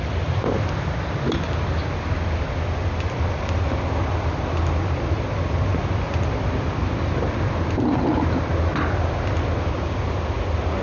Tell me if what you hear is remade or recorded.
recorded